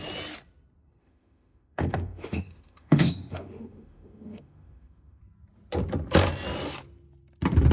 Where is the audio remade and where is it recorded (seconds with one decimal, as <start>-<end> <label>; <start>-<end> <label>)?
0.0-1.0 recorded; 1.0-5.2 remade; 5.2-7.7 recorded